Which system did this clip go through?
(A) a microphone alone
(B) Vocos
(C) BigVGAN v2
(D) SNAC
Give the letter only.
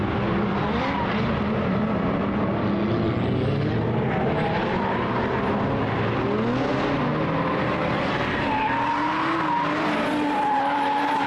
A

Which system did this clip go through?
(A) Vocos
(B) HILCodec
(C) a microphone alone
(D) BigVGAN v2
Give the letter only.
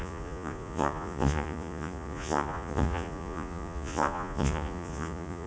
A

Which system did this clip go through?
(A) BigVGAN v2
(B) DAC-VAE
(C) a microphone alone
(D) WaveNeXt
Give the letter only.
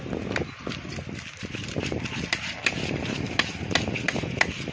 C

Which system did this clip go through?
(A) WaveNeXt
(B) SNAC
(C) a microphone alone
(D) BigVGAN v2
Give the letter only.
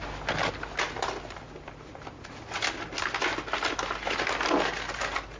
C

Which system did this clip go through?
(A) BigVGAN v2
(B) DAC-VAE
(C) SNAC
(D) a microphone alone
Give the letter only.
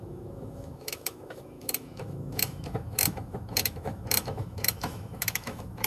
B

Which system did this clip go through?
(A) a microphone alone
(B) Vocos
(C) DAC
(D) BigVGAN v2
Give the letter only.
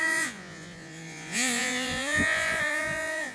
B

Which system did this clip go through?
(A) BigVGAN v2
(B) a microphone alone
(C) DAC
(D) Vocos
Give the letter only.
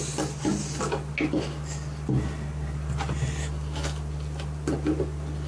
B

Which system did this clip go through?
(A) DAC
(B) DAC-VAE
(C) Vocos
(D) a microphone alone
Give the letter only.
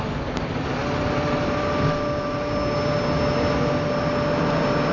D